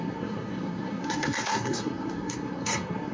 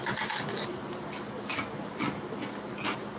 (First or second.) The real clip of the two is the second